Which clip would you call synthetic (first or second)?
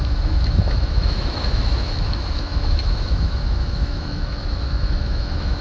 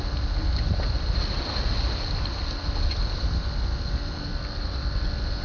first